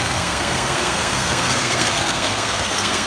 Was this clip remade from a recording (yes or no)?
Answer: yes